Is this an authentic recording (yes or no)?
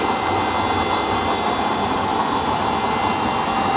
yes